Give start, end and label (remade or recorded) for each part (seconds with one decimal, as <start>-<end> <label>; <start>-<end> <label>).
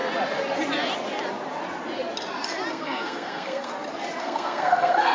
0.0-2.7 recorded; 2.7-3.7 remade; 3.7-4.2 recorded; 4.2-5.1 remade